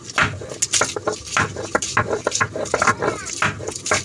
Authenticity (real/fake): real